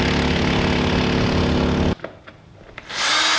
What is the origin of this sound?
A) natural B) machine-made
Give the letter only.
A